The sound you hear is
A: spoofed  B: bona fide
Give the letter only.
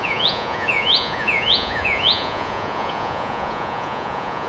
A